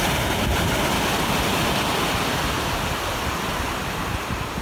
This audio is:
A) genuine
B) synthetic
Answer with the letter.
A